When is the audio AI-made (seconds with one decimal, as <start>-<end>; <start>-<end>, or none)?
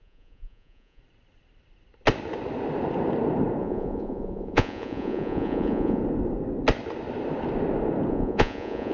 0.0-1.0; 3.6-6.0; 8.1-8.9